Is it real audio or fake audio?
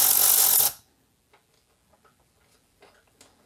real